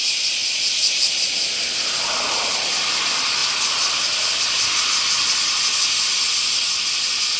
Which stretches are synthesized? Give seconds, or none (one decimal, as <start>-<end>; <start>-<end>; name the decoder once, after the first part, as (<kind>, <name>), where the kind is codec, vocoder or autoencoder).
none